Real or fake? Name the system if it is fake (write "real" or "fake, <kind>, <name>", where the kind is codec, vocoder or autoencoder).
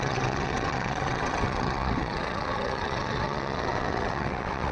fake, vocoder, WaveNeXt